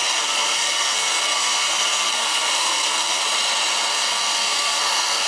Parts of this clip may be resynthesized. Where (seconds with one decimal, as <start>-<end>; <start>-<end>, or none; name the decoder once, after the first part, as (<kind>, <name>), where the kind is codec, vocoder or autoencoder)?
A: 0.0-3.2 (codec, SNAC); 3.9-5.3